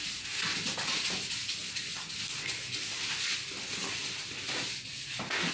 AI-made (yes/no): no